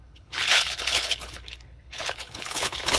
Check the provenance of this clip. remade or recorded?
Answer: remade